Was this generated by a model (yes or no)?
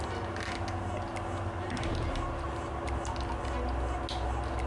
no